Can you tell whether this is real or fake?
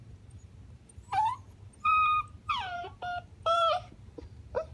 fake